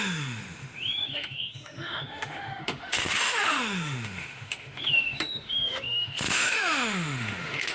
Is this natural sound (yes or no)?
no